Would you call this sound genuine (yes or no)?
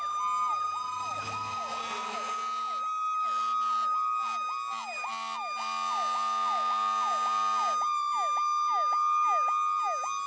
yes